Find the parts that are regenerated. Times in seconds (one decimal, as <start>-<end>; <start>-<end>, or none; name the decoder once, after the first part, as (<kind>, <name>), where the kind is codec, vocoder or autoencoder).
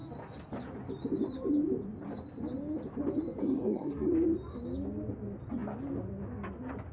3.4-4.1 (codec, SNAC)